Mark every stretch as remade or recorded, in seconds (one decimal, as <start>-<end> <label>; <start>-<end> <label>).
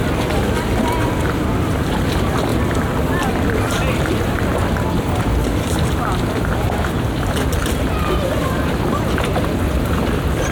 0.0-10.5 recorded